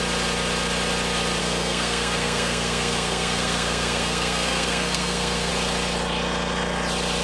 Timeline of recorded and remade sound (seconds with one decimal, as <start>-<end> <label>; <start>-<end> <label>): 0.0-1.4 recorded; 1.4-5.5 remade; 5.5-7.2 recorded